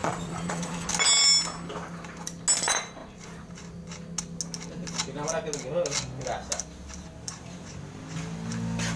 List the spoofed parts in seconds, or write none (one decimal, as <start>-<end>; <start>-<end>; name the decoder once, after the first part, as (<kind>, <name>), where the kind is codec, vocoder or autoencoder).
0.0-0.9 (vocoder, Vocos)